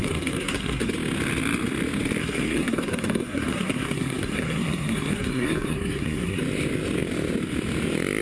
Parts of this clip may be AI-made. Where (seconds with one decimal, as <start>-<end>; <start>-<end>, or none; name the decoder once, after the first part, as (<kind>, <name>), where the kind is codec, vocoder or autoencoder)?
0.0-0.9 (codec, SNAC); 2.2-6.4